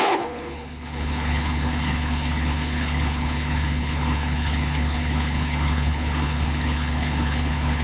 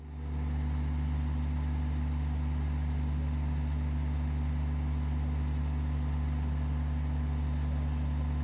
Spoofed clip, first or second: first